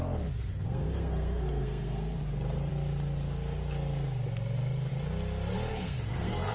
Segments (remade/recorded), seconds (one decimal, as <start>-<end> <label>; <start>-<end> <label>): 0.0-0.5 recorded; 0.5-2.2 remade; 2.2-5.7 recorded; 5.7-6.5 remade